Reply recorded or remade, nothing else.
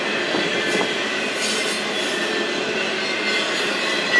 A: recorded